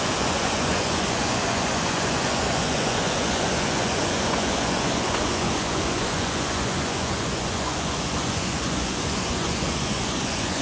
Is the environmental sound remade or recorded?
remade